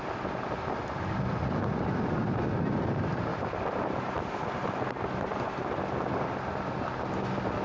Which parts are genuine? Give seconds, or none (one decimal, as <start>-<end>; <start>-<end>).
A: 0.0-7.6